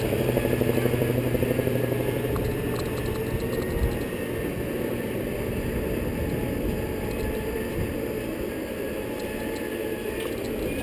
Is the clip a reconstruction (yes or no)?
no